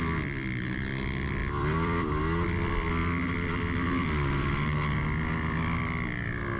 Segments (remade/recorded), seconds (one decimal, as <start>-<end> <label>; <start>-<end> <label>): 0.0-1.4 recorded; 1.4-2.2 remade; 2.2-6.6 recorded